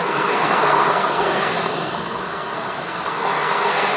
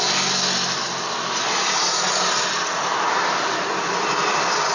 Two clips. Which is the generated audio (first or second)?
first